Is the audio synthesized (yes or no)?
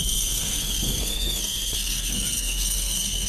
yes